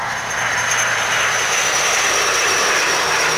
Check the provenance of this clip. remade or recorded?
recorded